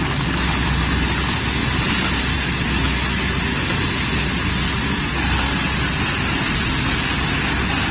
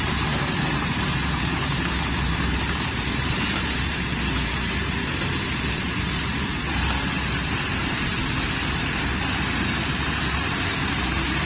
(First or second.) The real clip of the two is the first